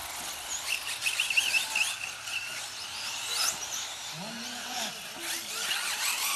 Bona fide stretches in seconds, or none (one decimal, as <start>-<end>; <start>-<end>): 0.0-6.4